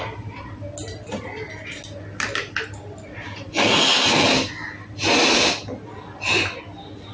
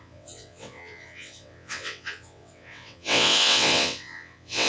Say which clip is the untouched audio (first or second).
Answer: first